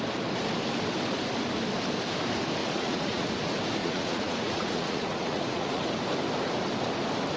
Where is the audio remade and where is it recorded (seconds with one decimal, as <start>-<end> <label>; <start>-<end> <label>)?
0.0-2.6 recorded; 2.6-3.3 remade; 3.3-3.8 recorded; 3.8-5.9 remade; 5.9-7.4 recorded